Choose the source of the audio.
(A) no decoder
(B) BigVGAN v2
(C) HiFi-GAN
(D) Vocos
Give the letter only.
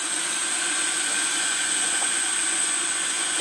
D